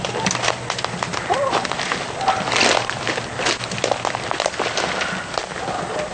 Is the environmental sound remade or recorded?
recorded